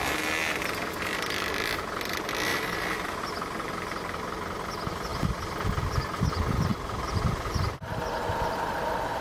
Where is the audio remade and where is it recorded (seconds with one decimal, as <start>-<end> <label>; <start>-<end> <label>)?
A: 0.0-2.5 recorded; 2.5-3.2 remade; 3.2-5.1 recorded; 5.1-5.7 remade; 5.7-6.7 recorded; 6.7-7.9 remade; 7.9-9.2 recorded